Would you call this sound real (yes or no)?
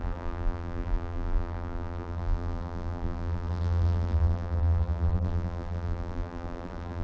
no